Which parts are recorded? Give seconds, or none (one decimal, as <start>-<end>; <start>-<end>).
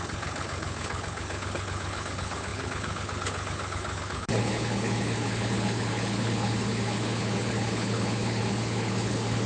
none